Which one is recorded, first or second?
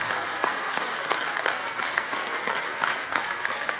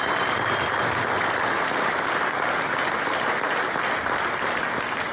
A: second